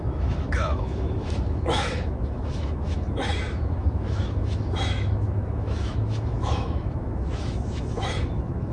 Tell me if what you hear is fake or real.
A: fake